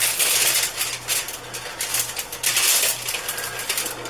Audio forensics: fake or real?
real